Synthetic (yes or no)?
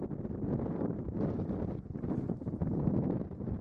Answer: no